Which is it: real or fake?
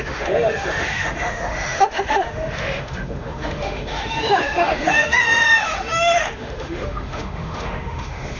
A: fake